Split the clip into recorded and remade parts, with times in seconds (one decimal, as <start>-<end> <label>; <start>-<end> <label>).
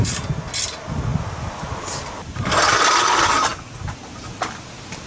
0.0-5.1 recorded